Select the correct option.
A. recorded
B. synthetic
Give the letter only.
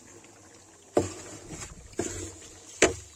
A